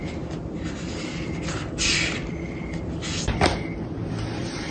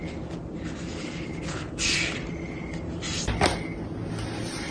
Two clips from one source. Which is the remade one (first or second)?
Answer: first